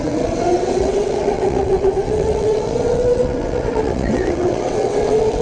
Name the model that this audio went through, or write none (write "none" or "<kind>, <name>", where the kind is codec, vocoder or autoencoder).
vocoder, WaveNeXt